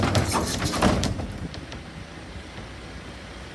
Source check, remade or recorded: remade